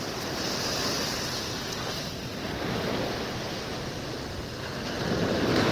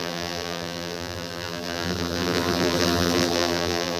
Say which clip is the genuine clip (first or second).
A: first